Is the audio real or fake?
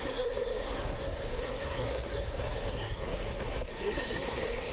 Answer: fake